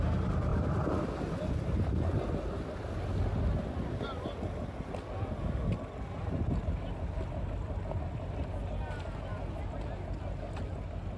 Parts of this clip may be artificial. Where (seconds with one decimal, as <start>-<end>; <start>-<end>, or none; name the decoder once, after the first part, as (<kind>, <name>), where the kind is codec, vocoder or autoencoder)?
none